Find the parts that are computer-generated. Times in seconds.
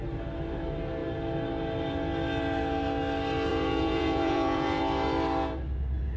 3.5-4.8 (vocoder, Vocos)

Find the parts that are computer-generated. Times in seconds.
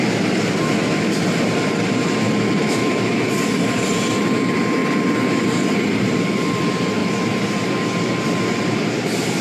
2.6-3.3 (autoencoder, DAC-VAE)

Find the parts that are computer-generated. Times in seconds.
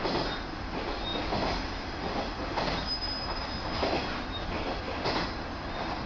none